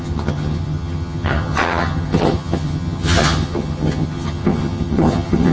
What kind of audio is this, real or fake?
fake